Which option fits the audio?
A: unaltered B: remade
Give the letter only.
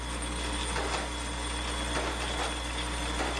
A